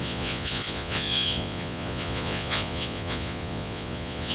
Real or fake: fake